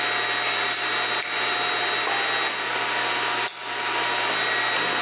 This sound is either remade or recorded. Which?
recorded